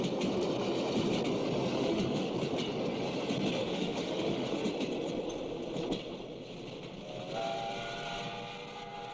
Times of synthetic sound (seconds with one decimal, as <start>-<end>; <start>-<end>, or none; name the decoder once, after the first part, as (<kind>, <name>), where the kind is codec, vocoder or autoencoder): 1.7-2.3 (autoencoder, DAC-VAE); 3.6-4.6